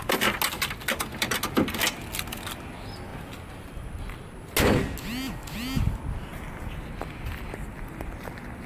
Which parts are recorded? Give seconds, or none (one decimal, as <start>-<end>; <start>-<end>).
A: 0.0-8.7